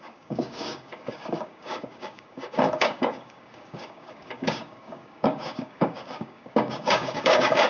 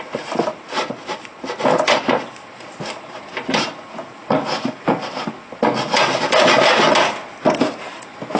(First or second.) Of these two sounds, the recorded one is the second